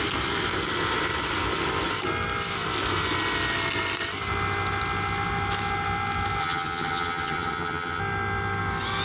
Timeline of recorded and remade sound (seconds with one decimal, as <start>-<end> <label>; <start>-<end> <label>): 0.0-6.4 recorded; 6.4-8.0 remade; 8.0-9.0 recorded